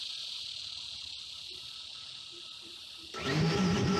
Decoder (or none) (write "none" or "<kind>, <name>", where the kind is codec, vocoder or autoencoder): none